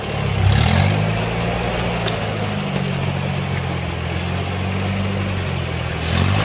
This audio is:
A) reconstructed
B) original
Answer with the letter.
B